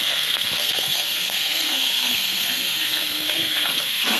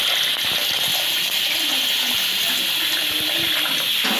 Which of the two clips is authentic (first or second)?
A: second